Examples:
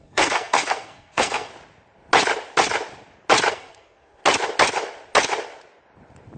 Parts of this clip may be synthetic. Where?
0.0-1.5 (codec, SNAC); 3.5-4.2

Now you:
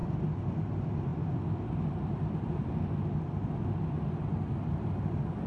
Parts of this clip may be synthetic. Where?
none